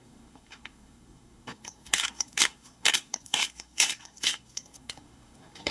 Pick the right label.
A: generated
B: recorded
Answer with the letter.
A